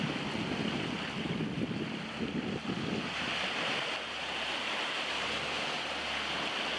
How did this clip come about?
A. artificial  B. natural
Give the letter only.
B